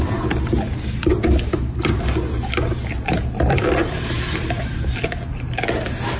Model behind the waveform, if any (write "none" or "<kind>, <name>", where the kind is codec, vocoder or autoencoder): none